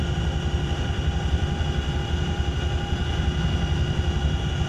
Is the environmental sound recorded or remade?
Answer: recorded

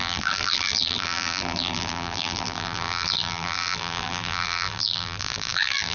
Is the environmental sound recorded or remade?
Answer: remade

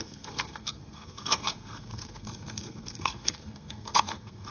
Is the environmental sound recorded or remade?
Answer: remade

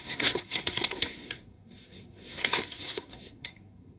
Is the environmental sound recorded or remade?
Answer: remade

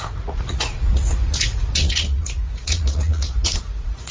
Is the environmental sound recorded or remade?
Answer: remade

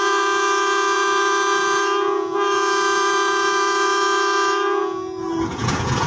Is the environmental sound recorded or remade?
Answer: remade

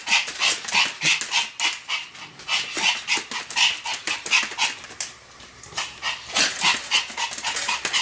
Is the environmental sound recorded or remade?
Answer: recorded